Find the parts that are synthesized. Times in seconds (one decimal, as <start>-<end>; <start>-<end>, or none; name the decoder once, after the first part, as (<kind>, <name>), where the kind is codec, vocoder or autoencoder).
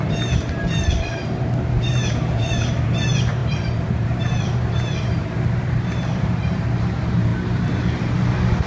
0.0-7.3 (vocoder, BigVGAN v2)